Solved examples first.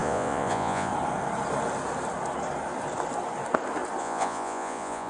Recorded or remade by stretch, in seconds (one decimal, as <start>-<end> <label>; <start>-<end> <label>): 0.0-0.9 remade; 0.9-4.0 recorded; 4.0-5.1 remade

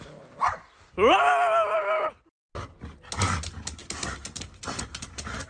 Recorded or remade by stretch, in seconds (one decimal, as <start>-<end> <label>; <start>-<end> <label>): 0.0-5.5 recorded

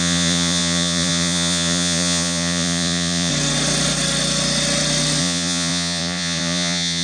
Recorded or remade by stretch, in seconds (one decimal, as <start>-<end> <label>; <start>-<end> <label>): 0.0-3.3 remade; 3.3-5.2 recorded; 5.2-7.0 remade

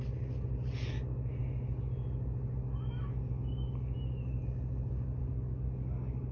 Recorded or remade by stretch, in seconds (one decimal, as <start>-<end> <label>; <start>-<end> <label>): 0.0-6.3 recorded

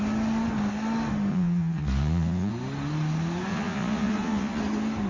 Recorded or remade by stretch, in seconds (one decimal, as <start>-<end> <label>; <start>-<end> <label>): 0.0-1.3 recorded; 1.3-2.5 remade; 2.5-3.5 recorded; 3.5-4.6 remade; 4.6-5.1 recorded